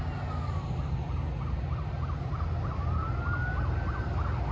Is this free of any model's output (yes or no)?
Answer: yes